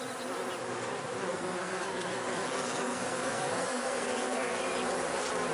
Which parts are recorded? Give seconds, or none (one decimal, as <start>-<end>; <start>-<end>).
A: 0.0-1.3; 4.6-5.5